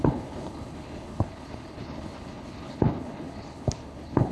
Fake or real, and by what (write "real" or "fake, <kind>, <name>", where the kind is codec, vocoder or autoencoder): fake, codec, HILCodec